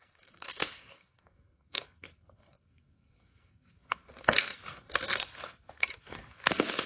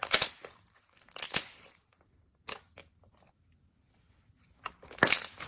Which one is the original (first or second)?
second